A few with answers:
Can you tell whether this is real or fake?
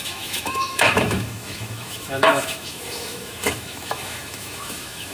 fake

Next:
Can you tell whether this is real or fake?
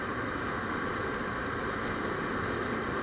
real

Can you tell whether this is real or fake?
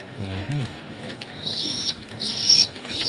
fake